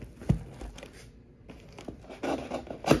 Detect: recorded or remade recorded